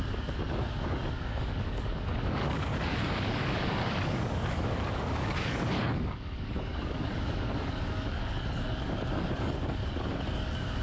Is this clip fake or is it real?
fake